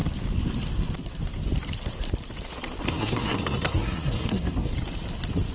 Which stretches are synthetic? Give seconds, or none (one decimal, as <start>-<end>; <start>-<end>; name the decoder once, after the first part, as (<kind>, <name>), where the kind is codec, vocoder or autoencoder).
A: 2.9-4.7 (codec, SNAC)